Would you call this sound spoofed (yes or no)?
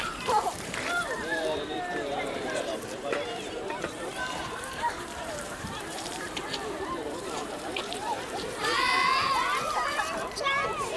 yes